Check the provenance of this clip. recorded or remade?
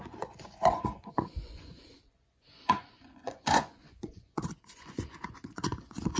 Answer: remade